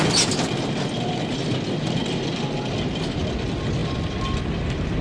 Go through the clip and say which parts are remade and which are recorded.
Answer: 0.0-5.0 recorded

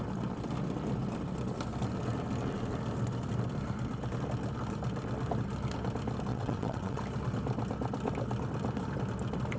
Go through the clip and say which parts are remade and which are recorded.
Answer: 0.0-6.3 recorded; 6.3-7.0 remade; 7.0-9.6 recorded

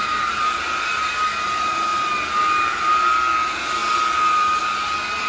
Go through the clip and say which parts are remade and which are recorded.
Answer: 0.0-5.3 recorded

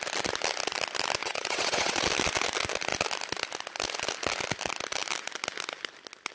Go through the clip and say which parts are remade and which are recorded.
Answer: 0.0-1.2 recorded; 1.2-2.0 remade; 2.0-6.3 recorded

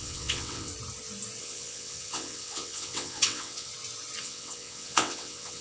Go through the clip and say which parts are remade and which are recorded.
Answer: 0.0-0.7 remade; 0.7-1.4 recorded; 1.4-3.7 remade; 3.7-4.2 recorded; 4.2-5.6 remade

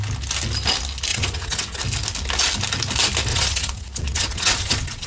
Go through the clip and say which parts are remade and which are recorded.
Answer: 0.0-1.1 recorded; 1.1-1.8 remade; 1.8-3.3 recorded; 3.3-5.1 remade

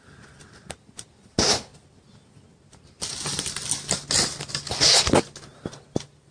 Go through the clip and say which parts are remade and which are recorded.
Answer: 0.0-6.3 recorded